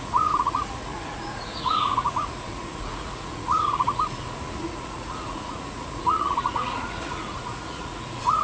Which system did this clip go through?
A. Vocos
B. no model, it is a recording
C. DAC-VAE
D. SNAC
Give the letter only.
A